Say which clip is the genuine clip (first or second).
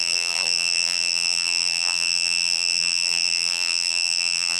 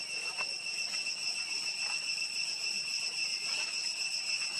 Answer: second